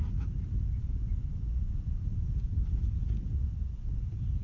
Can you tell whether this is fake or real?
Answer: fake